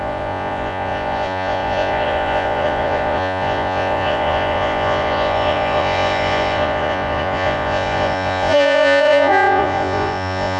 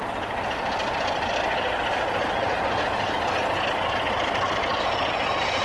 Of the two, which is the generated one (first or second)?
first